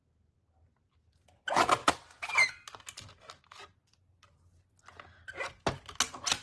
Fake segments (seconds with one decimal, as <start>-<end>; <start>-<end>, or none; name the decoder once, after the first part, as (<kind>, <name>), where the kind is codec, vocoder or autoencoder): none